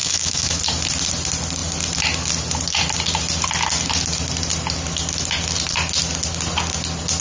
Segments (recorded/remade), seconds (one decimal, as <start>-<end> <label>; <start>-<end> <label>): 0.0-0.6 remade; 0.6-7.2 recorded